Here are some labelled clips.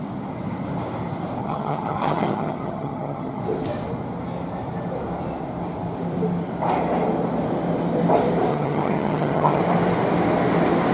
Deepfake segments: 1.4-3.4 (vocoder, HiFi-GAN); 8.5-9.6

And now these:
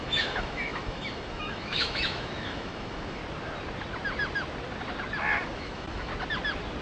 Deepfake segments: 0.0-3.2 (autoencoder, DAC-VAE); 5.5-6.1

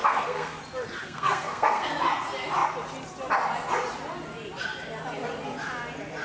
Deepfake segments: 0.0-0.6 (codec, SNAC); 1.0-1.9

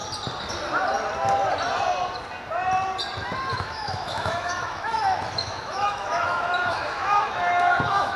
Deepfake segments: 3.5-8.2 (autoencoder, DAC-VAE)